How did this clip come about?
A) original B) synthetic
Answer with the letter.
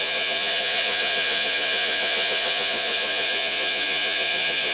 B